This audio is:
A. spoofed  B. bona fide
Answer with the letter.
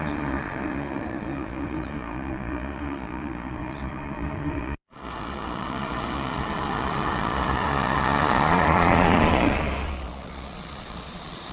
A